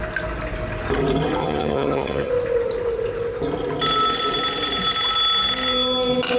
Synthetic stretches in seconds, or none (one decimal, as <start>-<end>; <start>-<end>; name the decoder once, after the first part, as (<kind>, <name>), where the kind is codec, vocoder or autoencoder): 1.4-2.3 (vocoder, HiFi-GAN)